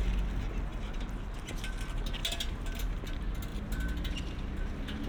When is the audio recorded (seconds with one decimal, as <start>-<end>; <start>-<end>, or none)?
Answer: 0.0-5.1